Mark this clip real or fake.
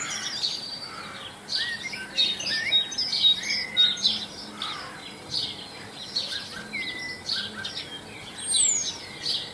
real